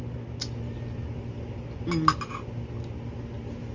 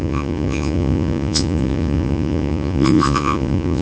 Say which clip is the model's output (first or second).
second